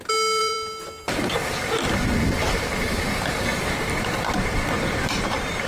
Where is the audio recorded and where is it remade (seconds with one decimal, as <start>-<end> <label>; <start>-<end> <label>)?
0.0-0.4 recorded; 0.4-1.9 remade; 1.9-3.5 recorded; 3.5-5.7 remade

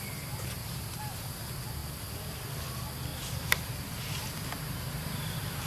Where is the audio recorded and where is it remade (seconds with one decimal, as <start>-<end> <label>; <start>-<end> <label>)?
0.0-0.6 recorded; 0.6-1.2 remade; 1.2-5.7 recorded

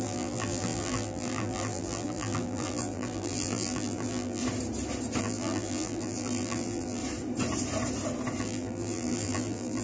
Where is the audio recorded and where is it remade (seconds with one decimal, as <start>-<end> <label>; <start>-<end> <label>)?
0.0-4.4 remade; 4.4-5.2 recorded; 5.2-7.0 remade; 7.0-8.4 recorded; 8.4-9.8 remade